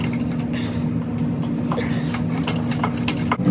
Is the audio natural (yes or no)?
yes